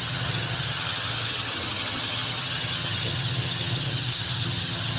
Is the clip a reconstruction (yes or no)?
yes